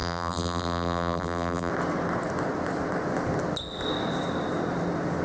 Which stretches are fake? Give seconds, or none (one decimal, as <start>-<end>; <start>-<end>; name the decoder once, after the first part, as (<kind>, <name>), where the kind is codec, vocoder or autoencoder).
0.0-1.7 (vocoder, BigVGAN v2)